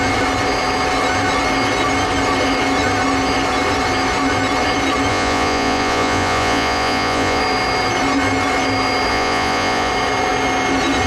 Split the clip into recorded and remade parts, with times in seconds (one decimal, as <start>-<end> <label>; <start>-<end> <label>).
0.0-5.1 recorded; 5.1-7.4 remade; 7.4-9.1 recorded; 9.1-9.9 remade; 9.9-11.1 recorded